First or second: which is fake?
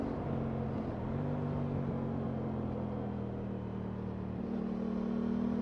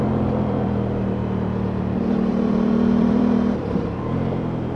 second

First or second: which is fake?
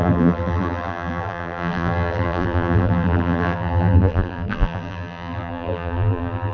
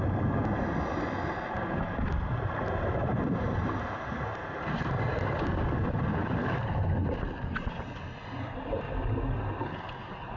first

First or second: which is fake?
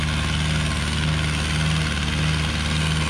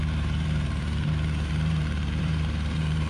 second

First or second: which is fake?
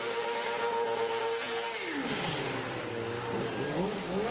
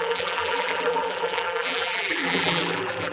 second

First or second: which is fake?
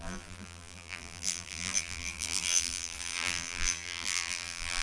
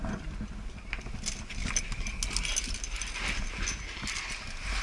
first